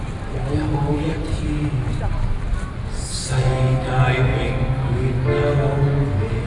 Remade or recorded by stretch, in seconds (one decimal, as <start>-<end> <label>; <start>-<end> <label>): 0.0-6.5 recorded